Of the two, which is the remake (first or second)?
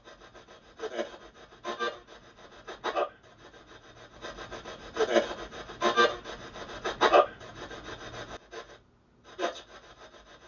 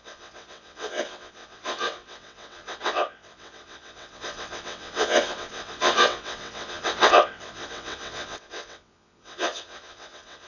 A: second